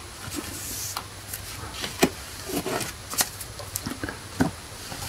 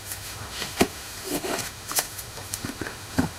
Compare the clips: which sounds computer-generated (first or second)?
second